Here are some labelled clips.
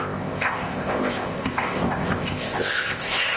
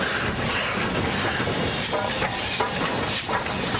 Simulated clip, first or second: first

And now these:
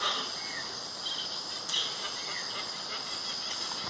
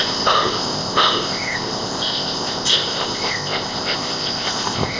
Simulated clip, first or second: second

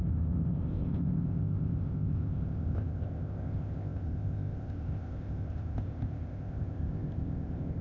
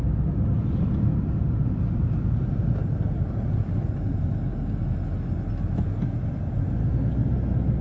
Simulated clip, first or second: first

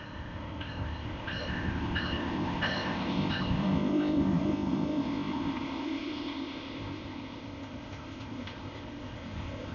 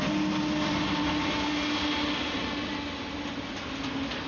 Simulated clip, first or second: first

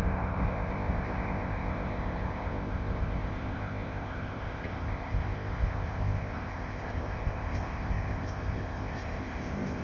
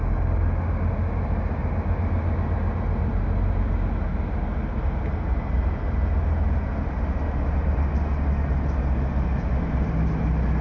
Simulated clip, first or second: first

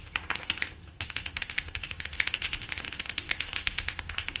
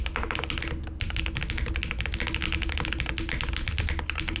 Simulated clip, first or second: first